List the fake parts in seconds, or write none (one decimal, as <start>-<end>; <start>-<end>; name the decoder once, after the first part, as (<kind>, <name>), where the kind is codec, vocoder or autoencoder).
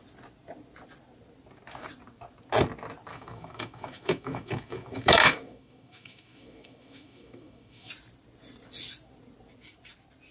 3.1-7.9 (autoencoder, DAC-VAE)